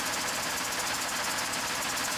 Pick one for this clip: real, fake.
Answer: real